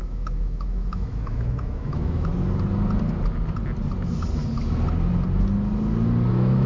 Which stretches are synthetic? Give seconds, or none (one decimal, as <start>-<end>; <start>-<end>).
0.0-2.3; 6.3-6.7